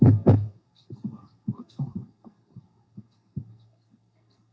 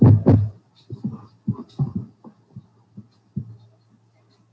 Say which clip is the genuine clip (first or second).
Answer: second